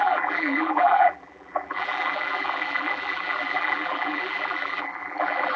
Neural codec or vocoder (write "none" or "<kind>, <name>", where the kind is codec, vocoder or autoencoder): vocoder, BigVGAN v2